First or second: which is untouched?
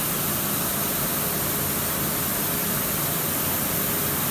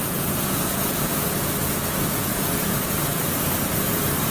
first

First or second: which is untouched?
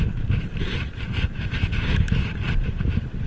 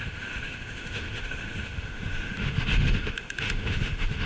first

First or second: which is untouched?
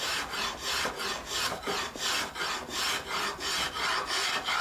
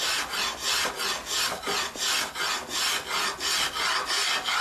second